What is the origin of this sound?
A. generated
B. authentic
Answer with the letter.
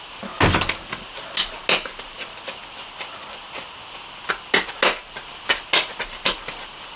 B